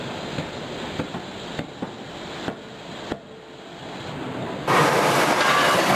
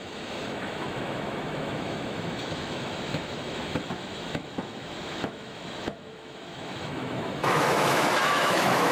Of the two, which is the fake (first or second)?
second